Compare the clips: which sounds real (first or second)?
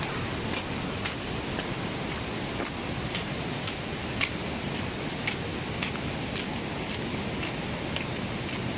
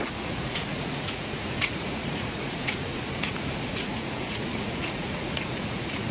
first